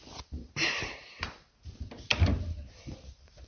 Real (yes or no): yes